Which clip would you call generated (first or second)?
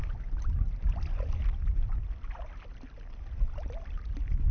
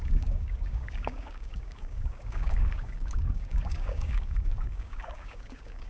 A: second